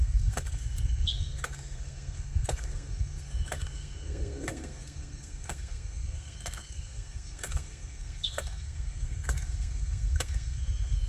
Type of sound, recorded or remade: remade